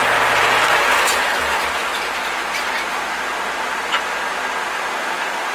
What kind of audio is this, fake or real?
real